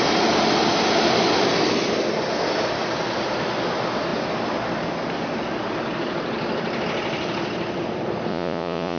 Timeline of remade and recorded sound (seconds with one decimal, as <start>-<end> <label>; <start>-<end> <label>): 0.0-8.3 recorded; 8.3-9.0 remade